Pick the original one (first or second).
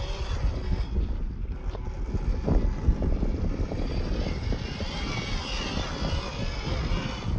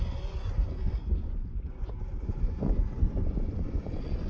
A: first